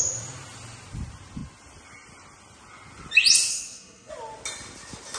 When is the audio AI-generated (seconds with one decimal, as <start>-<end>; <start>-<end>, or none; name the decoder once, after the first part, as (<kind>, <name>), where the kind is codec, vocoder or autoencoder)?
3.5-4.1 (codec, SNAC)